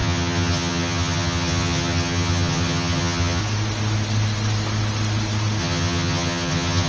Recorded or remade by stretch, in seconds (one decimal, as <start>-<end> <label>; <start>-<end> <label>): 0.0-3.4 remade; 3.4-5.6 recorded; 5.6-6.9 remade